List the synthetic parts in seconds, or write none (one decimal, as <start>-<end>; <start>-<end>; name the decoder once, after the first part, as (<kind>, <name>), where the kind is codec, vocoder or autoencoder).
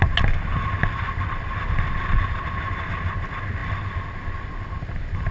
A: 0.8-2.7 (vocoder, BigVGAN v2); 3.6-4.5